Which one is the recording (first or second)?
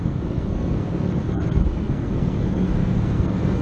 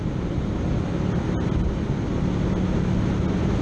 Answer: second